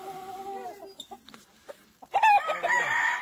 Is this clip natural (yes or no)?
yes